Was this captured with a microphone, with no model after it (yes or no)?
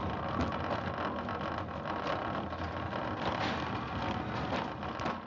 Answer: yes